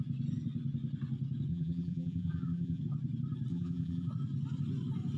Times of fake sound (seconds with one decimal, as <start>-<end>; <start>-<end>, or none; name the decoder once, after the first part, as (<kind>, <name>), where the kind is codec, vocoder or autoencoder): 1.5-2.8 (vocoder, BigVGAN v2); 3.5-4.1